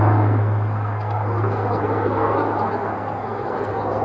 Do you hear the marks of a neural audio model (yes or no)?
yes